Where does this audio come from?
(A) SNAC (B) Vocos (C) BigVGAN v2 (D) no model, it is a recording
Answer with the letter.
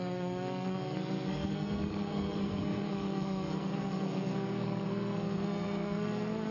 A